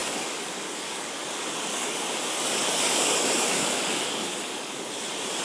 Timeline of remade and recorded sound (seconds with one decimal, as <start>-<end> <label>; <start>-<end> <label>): 0.0-1.2 remade; 1.2-1.7 recorded; 1.7-4.9 remade; 4.9-5.4 recorded